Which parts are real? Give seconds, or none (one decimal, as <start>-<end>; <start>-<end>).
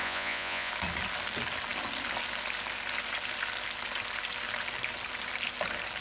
0.7-6.0